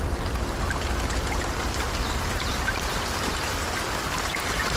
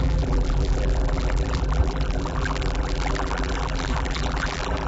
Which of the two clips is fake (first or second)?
second